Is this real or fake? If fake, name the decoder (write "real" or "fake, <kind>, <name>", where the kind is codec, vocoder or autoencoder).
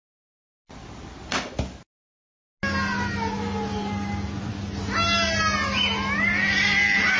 real